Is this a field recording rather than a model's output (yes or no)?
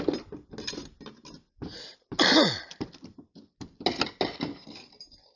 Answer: yes